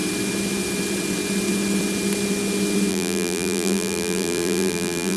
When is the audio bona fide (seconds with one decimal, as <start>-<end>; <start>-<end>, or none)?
0.0-2.9